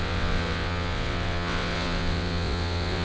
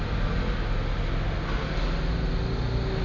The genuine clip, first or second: second